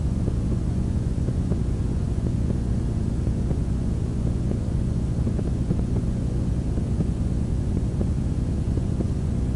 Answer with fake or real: fake